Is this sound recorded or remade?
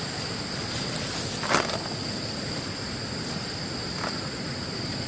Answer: recorded